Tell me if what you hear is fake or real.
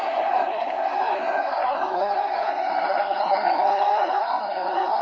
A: fake